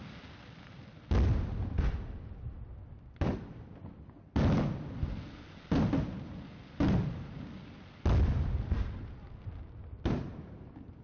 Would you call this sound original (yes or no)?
yes